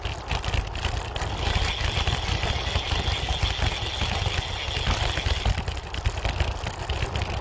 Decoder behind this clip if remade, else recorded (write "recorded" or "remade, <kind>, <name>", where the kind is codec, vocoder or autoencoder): recorded